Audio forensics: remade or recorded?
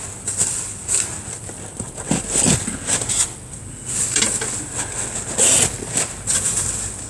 recorded